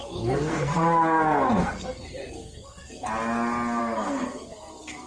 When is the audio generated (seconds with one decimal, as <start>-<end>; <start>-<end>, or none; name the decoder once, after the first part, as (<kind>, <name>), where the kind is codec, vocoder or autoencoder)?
0.0-3.1 (codec, SNAC); 3.8-5.1